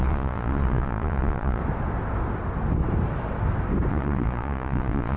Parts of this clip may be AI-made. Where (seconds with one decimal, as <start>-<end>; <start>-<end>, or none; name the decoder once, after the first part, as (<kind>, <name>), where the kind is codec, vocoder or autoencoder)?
0.0-1.6 (vocoder, Vocos); 3.9-5.2